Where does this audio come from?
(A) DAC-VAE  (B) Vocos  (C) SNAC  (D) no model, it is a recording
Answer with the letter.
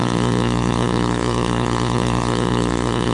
C